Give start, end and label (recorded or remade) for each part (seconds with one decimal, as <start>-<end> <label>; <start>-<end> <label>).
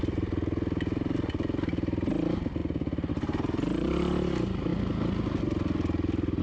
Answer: 0.0-6.4 recorded